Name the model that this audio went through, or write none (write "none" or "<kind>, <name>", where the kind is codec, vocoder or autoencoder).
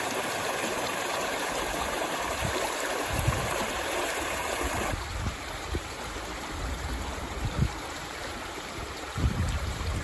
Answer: vocoder, BigVGAN v2